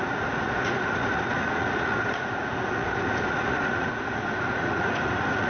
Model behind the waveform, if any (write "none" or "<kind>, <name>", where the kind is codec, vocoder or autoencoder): vocoder, Vocos